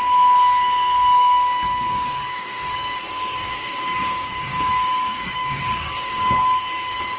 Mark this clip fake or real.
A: fake